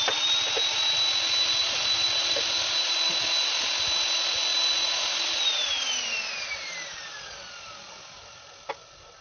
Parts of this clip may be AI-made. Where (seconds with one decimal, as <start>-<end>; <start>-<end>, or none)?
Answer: none